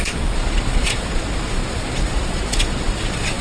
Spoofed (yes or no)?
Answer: yes